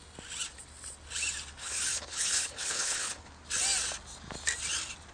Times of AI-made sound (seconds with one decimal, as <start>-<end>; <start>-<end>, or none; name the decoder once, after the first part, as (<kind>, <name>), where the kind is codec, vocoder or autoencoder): 1.6-3.3 (codec, HILCodec)